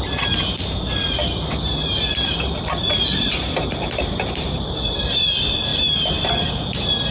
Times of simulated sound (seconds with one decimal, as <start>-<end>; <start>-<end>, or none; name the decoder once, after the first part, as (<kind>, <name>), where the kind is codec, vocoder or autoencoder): 1.8-4.7 (vocoder, BigVGAN v2)

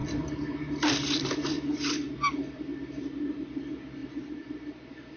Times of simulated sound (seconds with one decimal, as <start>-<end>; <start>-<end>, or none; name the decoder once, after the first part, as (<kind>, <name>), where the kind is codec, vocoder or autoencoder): 0.0-3.0 (vocoder, BigVGAN v2); 4.0-5.2